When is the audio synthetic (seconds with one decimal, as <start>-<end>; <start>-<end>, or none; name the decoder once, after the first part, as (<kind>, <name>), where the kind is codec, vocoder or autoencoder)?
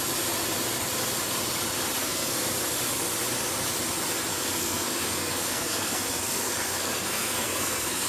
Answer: 2.0-2.5 (codec, SNAC); 4.3-8.1